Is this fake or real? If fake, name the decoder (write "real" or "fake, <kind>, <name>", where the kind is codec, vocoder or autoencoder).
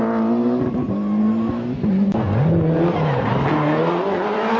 real